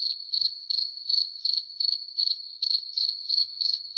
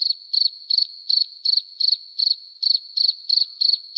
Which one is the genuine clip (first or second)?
second